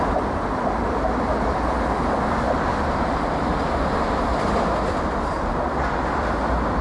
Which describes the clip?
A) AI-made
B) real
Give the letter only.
B